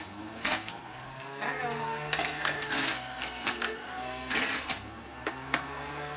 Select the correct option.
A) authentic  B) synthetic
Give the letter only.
B